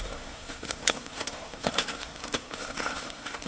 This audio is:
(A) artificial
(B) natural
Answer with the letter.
A